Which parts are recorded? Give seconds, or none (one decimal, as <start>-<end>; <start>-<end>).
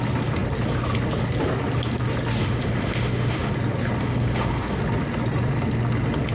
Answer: 0.0-2.4; 3.5-4.0; 4.8-6.3